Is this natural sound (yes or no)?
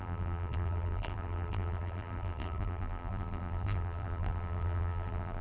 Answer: no